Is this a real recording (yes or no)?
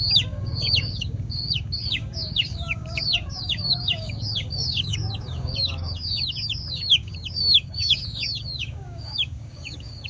no